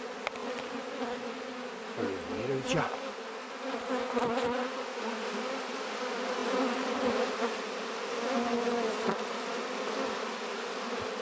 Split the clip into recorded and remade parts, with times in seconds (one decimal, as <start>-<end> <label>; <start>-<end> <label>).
0.0-4.6 recorded; 4.6-5.1 remade; 5.1-11.2 recorded